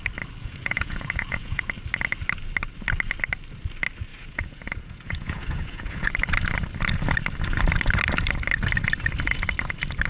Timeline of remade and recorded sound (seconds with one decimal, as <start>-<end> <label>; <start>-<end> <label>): 0.0-0.4 recorded; 0.4-1.6 remade; 1.6-4.1 recorded; 4.1-6.1 remade; 6.1-10.1 recorded